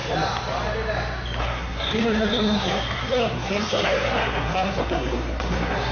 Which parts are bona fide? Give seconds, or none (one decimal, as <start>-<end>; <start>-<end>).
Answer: 0.0-1.4